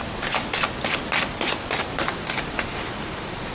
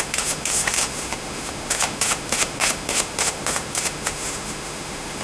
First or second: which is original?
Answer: first